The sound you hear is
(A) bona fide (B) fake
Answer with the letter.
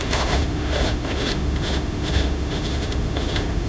B